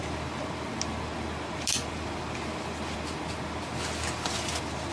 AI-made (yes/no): no